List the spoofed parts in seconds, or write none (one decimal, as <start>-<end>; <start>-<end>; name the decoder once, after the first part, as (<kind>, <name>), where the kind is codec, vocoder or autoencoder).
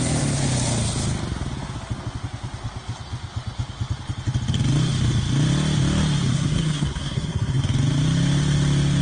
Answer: 6.3-7.6 (codec, SNAC)